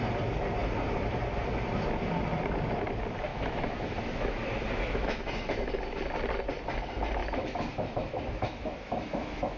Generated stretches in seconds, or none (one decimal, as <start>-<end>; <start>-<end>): 3.3-5.7; 7.2-9.6